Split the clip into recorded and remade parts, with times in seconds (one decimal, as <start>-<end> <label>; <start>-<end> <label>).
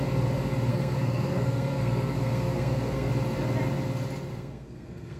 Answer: 0.0-0.7 recorded; 0.7-3.1 remade; 3.1-4.3 recorded; 4.3-5.2 remade